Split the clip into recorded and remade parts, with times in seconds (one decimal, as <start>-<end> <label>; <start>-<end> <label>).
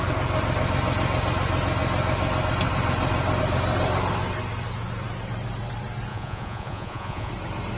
0.0-6.1 recorded; 6.1-7.3 remade; 7.3-7.8 recorded